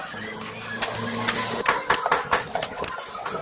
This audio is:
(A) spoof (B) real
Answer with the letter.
B